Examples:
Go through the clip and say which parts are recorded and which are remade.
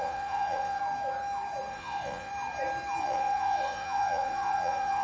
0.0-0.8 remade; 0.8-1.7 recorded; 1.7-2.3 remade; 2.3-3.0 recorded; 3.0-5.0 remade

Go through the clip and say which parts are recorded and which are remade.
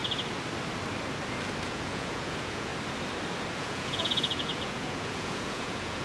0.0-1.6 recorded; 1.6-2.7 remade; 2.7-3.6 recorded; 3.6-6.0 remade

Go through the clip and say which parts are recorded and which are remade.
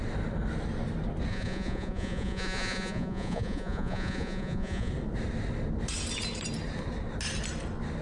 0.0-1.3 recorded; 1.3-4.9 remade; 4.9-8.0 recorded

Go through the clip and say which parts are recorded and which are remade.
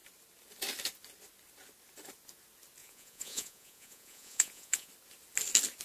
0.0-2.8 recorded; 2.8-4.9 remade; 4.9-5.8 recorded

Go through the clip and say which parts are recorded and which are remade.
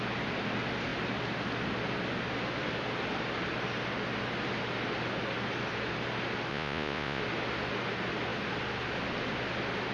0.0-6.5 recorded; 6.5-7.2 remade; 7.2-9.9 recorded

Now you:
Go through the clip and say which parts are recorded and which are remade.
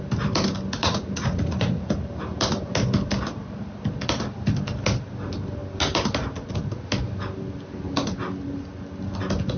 0.0-0.8 recorded; 0.8-1.8 remade; 1.8-9.6 recorded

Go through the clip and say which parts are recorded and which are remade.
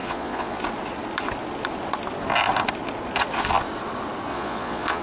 0.0-0.6 remade; 0.6-4.3 recorded; 4.3-5.0 remade